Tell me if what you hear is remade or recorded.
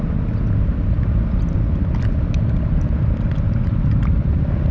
recorded